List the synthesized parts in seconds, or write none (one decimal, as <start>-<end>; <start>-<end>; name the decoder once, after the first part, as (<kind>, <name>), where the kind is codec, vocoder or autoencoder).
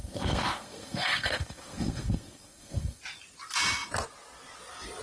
0.0-3.0 (codec, SNAC)